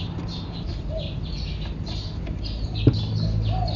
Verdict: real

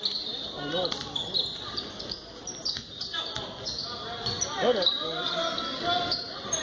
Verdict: real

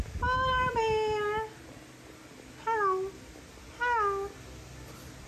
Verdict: real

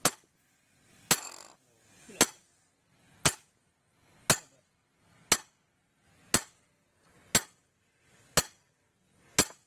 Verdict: real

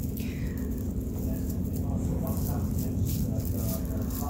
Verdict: real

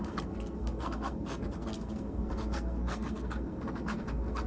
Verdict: fake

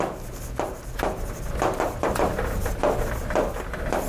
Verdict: real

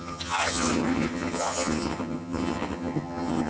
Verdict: fake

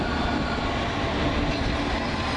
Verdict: real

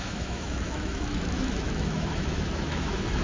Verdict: fake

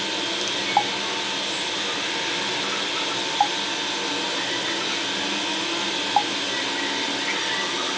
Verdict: real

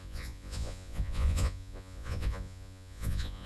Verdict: fake